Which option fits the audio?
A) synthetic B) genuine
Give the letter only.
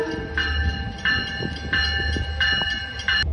B